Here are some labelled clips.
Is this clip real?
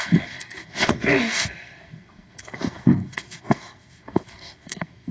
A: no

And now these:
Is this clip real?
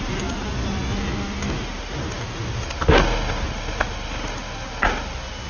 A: yes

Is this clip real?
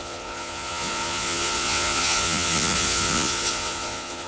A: no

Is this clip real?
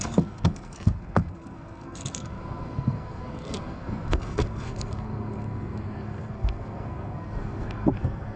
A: no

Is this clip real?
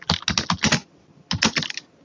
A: yes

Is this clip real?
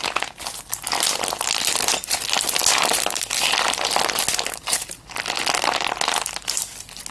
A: yes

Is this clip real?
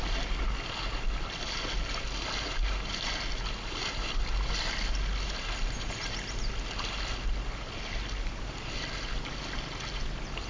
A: yes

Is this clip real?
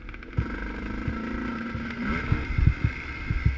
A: yes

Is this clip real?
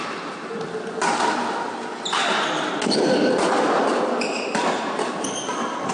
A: yes